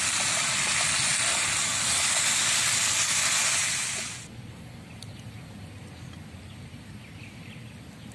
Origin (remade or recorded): recorded